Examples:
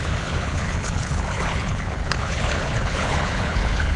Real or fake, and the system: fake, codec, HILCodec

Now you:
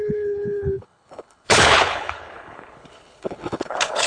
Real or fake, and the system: fake, codec, HILCodec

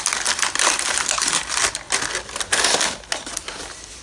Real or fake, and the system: real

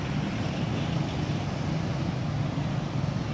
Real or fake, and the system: real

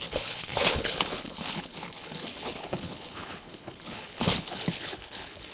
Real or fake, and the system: fake, codec, HILCodec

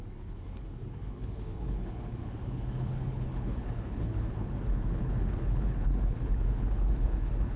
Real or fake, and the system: fake, codec, HILCodec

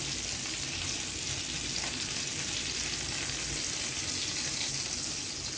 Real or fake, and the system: real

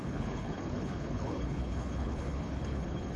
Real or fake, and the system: fake, codec, HILCodec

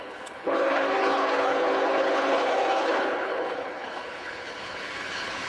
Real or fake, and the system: fake, codec, HILCodec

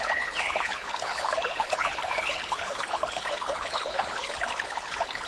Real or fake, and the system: fake, codec, HILCodec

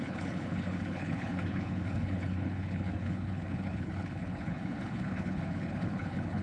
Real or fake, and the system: fake, codec, HILCodec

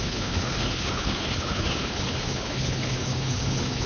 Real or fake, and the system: fake, codec, HILCodec